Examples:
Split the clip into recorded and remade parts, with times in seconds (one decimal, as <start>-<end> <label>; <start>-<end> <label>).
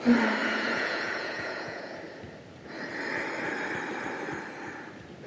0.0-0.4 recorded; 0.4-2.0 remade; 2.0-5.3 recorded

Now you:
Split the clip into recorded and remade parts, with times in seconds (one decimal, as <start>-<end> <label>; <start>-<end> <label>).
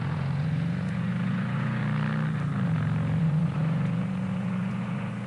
0.0-1.8 remade; 1.8-3.2 recorded; 3.2-5.3 remade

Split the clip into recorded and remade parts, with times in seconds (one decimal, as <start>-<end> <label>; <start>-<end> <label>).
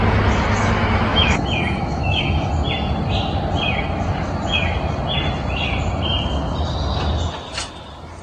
0.0-1.1 recorded; 1.1-2.5 remade; 2.5-8.2 recorded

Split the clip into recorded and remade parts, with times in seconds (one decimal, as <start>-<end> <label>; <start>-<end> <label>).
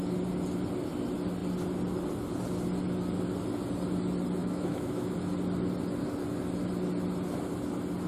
0.0-4.4 recorded; 4.4-5.1 remade; 5.1-8.1 recorded